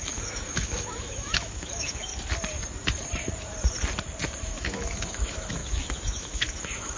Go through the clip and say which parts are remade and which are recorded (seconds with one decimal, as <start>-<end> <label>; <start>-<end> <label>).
0.0-2.1 remade; 2.1-4.4 recorded; 4.4-7.0 remade

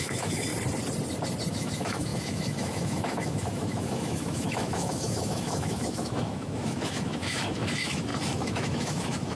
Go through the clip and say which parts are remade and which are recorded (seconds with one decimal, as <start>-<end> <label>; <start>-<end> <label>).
0.0-0.5 remade; 0.5-1.5 recorded; 1.5-9.3 remade

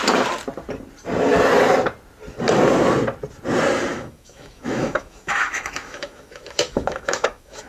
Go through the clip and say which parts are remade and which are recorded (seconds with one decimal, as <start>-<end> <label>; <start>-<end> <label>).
0.0-3.9 recorded; 3.9-7.7 remade

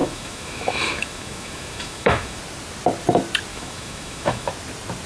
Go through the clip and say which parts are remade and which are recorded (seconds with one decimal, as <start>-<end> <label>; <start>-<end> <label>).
0.0-2.4 remade; 2.4-3.5 recorded; 3.5-4.5 remade; 4.5-5.1 recorded

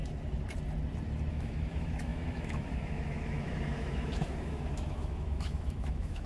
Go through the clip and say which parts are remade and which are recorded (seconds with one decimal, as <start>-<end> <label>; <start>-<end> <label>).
0.0-1.3 recorded; 1.3-6.3 remade